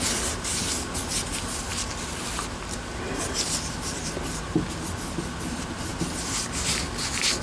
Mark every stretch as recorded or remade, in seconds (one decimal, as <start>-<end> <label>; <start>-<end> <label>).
0.0-1.7 recorded; 1.7-4.7 remade; 4.7-7.4 recorded